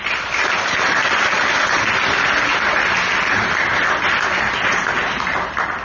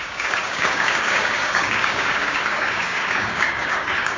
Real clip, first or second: first